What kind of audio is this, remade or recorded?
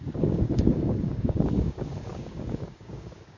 remade